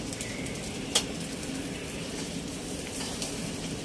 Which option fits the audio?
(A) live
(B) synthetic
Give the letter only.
A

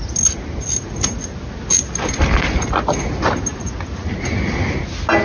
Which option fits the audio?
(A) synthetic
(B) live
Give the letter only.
B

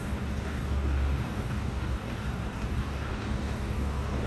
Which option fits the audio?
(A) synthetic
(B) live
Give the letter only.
A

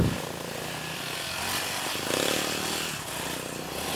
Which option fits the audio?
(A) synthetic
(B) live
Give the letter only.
B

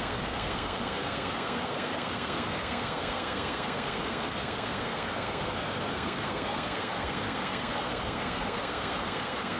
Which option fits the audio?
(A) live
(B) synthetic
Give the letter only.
B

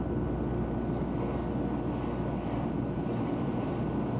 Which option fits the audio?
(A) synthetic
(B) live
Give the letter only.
B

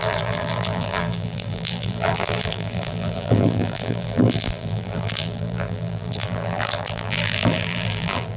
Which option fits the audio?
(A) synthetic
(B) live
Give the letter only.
A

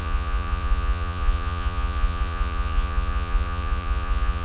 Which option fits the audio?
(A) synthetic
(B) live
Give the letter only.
A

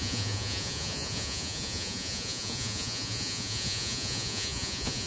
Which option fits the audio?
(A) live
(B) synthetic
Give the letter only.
B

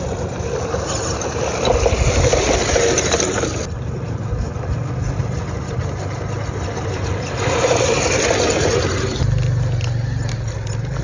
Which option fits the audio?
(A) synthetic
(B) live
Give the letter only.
B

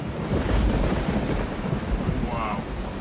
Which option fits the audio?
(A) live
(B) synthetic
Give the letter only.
B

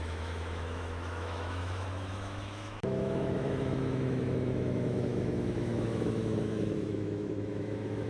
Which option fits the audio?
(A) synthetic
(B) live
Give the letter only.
A